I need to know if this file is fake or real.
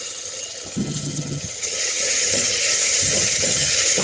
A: fake